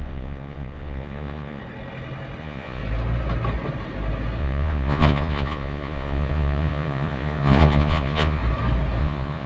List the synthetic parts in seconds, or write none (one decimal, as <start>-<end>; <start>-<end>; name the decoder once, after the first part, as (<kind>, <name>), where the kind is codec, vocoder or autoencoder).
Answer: 0.0-1.6 (vocoder, Vocos); 2.4-2.8; 4.4-8.4; 9.0-9.5